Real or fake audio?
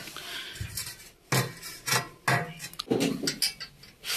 real